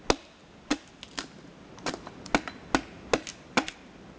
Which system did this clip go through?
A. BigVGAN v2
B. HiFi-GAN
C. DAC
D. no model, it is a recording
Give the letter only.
D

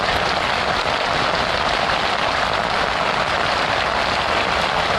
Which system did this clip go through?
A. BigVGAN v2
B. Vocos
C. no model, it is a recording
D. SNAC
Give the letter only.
C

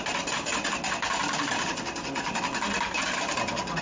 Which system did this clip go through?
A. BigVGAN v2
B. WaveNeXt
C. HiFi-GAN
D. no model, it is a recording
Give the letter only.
D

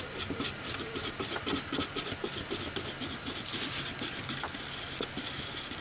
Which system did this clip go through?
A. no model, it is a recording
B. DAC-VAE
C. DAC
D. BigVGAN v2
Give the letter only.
A